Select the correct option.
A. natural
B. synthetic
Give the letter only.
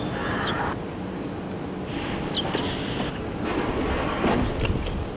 A